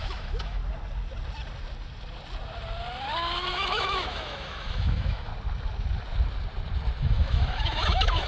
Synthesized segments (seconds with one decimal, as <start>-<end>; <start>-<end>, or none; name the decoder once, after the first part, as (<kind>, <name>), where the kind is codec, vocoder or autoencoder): 0.0-0.6 (autoencoder, DAC-VAE); 3.5-5.3; 7.0-8.3